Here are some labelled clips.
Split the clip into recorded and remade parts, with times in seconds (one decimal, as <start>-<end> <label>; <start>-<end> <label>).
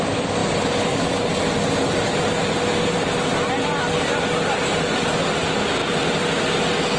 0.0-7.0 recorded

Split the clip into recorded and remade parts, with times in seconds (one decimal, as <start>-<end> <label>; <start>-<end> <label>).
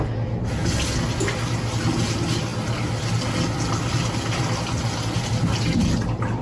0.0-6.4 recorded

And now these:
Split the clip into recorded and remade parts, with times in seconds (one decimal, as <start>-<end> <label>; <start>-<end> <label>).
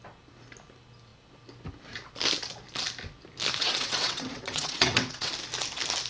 0.0-3.6 recorded; 3.6-5.3 remade; 5.3-6.1 recorded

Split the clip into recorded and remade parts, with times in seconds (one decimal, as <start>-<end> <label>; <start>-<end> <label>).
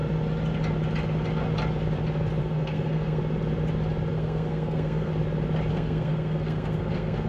0.0-2.4 recorded; 2.4-3.2 remade; 3.2-4.1 recorded; 4.1-5.1 remade; 5.1-5.7 recorded; 5.7-7.3 remade